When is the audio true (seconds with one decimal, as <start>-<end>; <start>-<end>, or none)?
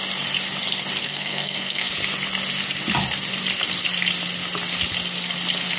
0.0-1.0; 1.9-5.8